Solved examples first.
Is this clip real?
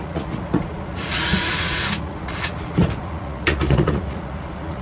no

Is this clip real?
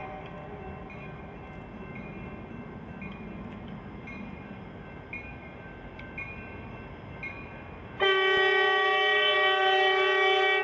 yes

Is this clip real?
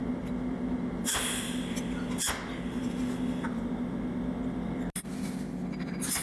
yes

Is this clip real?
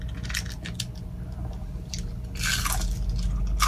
yes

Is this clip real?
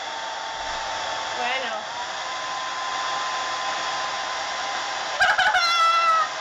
yes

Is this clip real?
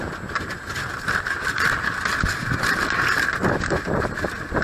yes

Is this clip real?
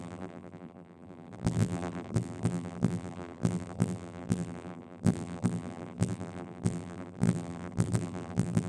no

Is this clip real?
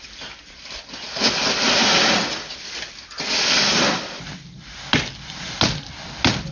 yes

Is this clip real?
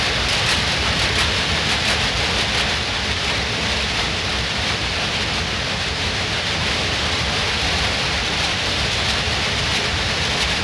no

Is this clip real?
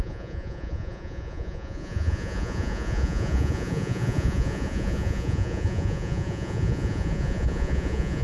no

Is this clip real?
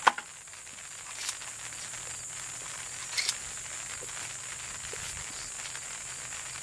yes